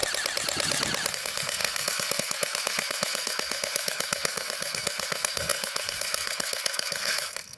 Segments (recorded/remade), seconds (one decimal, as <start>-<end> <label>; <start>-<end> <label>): 0.0-1.1 recorded; 1.1-7.6 remade